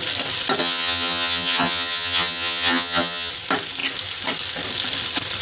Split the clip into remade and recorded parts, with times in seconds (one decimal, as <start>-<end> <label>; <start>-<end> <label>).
0.0-0.6 recorded; 0.6-3.3 remade; 3.3-5.4 recorded